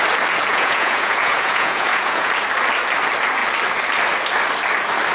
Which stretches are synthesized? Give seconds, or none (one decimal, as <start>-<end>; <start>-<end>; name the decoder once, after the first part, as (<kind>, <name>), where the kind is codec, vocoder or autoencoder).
0.5-2.3 (vocoder, Vocos)

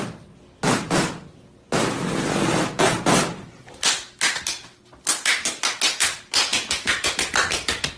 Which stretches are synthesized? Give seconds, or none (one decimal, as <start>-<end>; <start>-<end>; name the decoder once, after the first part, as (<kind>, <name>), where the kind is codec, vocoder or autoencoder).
6.5-7.1 (vocoder, Vocos)